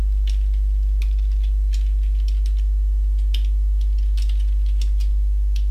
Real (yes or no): yes